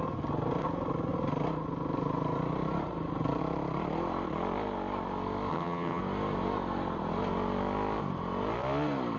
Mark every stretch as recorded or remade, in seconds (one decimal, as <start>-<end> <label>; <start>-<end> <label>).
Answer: 0.0-5.5 recorded; 5.5-6.0 remade; 6.0-9.2 recorded